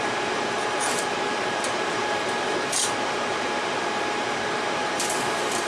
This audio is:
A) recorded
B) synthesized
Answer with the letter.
B